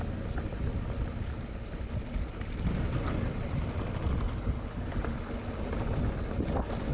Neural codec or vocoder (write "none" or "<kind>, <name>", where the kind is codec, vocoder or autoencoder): none